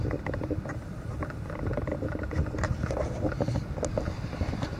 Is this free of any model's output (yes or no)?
yes